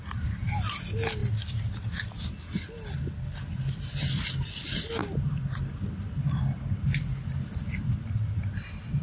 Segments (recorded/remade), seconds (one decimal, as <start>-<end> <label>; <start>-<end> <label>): 0.0-9.0 recorded